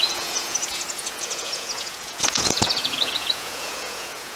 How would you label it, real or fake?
fake